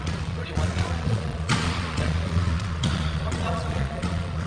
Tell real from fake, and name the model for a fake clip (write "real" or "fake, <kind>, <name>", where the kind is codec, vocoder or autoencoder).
fake, vocoder, Vocos